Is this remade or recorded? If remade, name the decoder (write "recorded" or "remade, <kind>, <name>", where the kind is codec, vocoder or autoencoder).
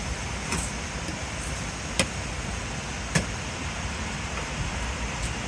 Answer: recorded